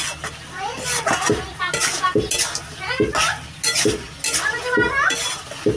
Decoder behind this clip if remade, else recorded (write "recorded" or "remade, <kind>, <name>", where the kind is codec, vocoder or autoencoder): recorded